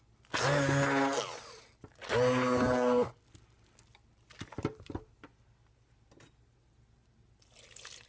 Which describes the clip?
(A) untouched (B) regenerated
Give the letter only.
A